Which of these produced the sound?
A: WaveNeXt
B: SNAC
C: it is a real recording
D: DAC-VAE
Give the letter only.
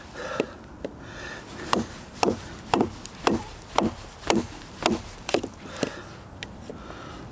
C